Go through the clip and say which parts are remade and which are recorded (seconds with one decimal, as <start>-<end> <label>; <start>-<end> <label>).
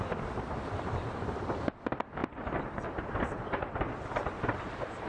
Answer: 0.0-2.2 recorded; 2.2-5.1 remade